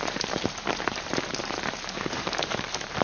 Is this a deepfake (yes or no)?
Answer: yes